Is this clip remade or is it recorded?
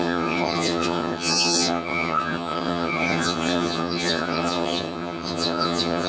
remade